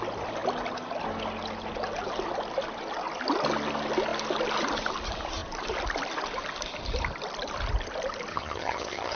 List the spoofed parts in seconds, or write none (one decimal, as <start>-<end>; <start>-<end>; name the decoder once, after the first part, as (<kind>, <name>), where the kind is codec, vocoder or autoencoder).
8.3-9.2 (vocoder, HiFi-GAN)